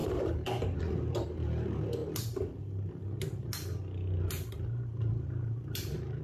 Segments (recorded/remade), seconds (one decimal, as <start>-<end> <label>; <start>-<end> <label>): 0.0-2.0 remade; 2.0-4.5 recorded; 4.5-6.2 remade